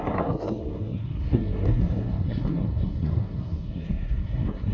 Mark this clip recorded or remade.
remade